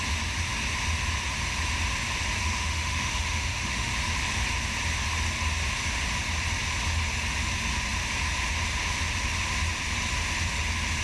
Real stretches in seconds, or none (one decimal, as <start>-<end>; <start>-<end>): 0.0-2.4; 3.9-11.0